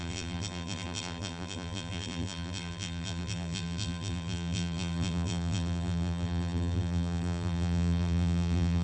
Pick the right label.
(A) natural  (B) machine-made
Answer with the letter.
B